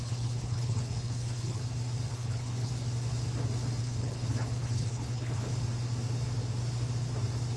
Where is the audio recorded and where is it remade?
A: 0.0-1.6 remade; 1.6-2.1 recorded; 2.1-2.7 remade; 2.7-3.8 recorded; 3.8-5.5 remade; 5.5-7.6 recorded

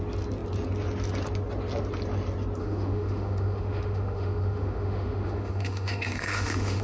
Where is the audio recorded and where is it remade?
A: 0.0-2.6 recorded; 2.6-6.8 remade

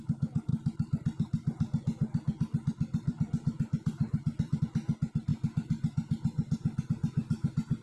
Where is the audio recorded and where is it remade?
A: 0.0-0.5 recorded; 0.5-4.6 remade; 4.6-7.8 recorded

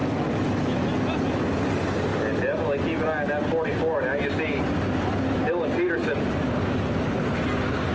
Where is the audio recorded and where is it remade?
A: 0.0-7.9 recorded

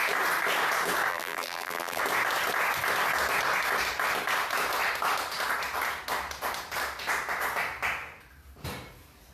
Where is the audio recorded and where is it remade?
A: 0.0-1.1 recorded; 1.1-2.0 remade; 2.0-9.3 recorded